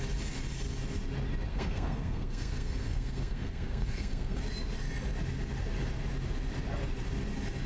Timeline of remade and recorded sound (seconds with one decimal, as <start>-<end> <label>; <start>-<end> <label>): 0.0-1.5 recorded; 1.5-4.4 remade; 4.4-7.7 recorded